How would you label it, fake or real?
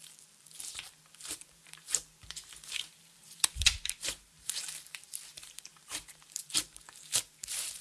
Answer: fake